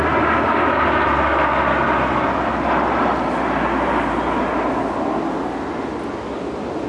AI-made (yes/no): no